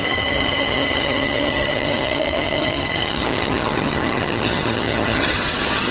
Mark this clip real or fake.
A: fake